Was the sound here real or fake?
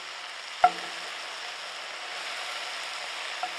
real